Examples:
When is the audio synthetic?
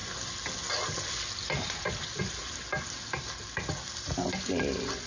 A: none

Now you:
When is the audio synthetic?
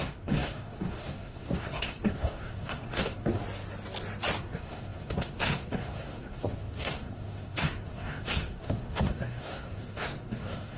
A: 0.0-3.4 (codec, SNAC); 4.4-10.8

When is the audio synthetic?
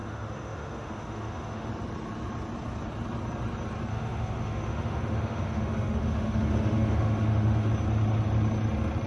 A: 0.0-1.7 (autoencoder, DAC-VAE); 3.9-7.7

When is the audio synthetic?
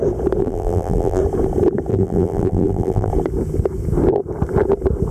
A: 0.4-1.2 (vocoder, BigVGAN v2); 1.9-3.1